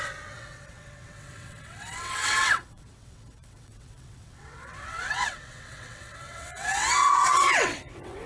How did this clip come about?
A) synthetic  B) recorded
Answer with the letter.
A